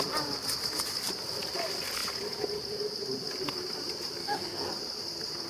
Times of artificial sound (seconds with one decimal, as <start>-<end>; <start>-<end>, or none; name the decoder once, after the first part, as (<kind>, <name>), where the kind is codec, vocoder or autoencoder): 4.2-4.7 (codec, SNAC)